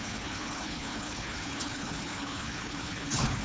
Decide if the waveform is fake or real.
fake